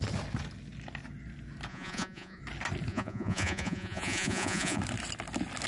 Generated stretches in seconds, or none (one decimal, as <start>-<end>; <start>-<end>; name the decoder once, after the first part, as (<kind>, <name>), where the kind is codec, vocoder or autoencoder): 1.7-2.4 (vocoder, Vocos); 2.9-4.8